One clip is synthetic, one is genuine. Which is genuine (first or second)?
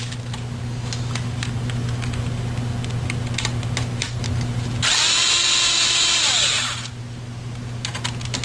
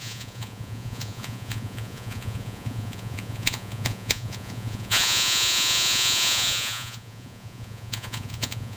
first